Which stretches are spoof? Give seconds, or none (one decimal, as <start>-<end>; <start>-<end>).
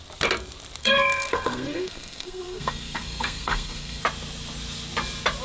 0.8-4.0